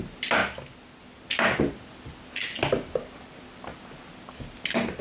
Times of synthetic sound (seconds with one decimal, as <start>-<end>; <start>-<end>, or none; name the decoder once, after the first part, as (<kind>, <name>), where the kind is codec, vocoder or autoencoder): 0.4-1.3 (vocoder, BigVGAN v2)